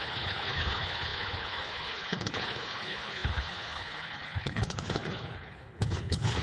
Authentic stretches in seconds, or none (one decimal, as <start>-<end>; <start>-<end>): none